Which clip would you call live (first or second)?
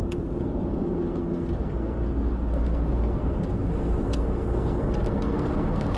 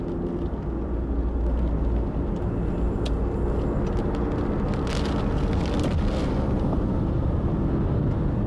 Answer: second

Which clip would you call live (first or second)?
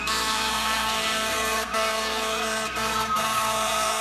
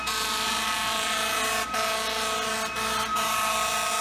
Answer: second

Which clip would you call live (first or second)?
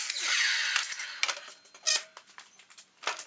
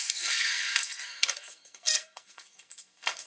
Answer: first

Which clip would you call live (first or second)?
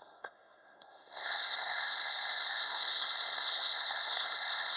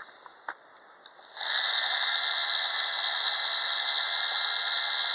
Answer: second